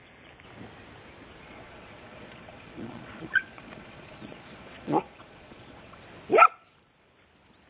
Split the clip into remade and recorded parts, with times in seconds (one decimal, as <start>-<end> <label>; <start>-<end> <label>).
0.0-1.4 recorded; 1.4-6.0 remade; 6.0-7.7 recorded